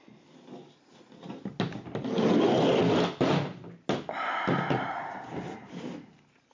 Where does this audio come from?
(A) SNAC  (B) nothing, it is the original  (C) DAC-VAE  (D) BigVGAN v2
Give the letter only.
B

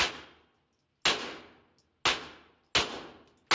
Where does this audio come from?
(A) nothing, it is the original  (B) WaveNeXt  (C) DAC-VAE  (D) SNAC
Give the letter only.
A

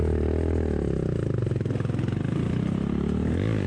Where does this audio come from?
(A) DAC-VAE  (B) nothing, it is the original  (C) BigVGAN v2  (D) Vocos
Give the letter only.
B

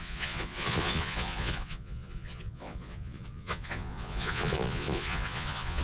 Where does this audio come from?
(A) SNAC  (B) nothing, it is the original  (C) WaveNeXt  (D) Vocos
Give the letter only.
D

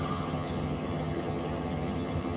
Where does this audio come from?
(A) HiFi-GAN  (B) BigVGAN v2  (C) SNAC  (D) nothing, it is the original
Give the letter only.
A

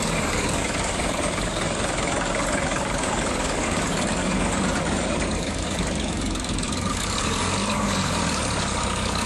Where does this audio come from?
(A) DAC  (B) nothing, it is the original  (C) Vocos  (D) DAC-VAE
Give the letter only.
A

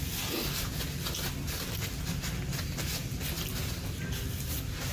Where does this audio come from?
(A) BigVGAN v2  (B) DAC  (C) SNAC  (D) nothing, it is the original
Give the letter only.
D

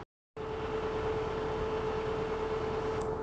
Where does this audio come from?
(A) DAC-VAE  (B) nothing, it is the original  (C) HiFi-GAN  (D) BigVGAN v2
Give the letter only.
B